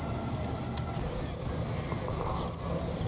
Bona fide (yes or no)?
yes